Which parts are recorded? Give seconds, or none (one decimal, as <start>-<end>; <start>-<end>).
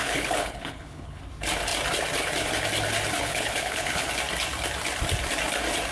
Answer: 1.2-3.2; 4.1-5.9